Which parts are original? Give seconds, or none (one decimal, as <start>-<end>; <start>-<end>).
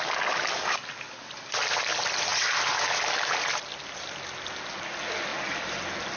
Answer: 0.0-6.2